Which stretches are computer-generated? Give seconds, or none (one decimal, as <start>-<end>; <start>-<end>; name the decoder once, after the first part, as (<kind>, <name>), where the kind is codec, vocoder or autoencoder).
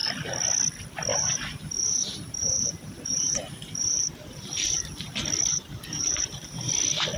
1.1-5.0 (vocoder, BigVGAN v2); 5.5-6.7